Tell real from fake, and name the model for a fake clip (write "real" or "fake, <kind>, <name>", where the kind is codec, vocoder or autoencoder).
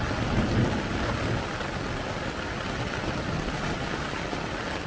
real